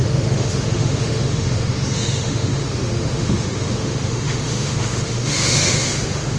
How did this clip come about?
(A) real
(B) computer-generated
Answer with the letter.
B